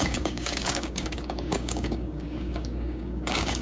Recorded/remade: remade